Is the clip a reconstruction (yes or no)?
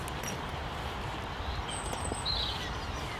no